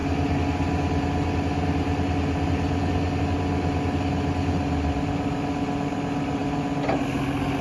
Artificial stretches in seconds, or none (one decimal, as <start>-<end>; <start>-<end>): none

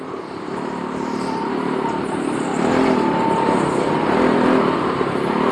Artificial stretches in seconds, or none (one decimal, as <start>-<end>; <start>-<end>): none

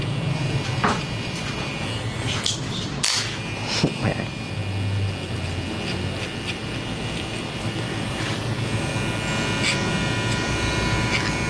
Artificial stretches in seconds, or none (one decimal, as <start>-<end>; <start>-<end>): 0.0-4.6; 6.6-8.9; 9.9-11.5